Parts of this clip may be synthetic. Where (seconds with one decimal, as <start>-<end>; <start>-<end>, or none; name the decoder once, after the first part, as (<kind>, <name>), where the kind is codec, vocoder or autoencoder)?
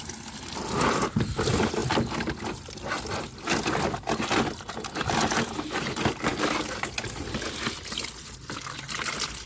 none